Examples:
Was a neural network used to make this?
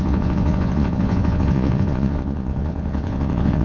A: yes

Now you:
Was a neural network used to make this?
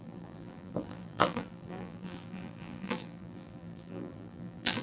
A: yes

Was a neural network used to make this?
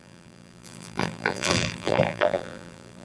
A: yes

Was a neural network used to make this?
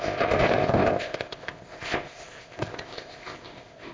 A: yes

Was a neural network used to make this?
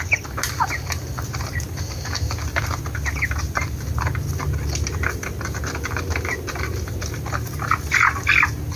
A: no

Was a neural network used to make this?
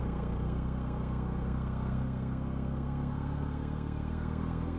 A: yes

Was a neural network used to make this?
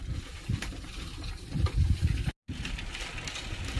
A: no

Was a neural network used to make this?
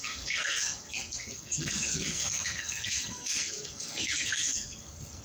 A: yes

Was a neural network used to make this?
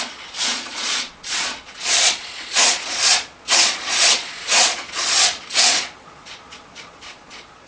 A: yes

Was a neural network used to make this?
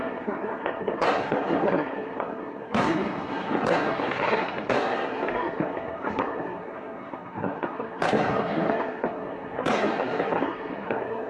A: yes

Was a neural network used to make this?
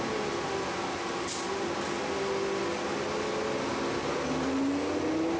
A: no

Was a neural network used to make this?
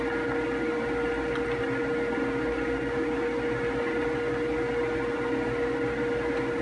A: no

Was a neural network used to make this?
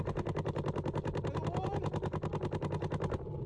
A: no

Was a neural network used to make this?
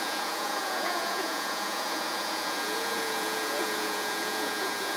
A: yes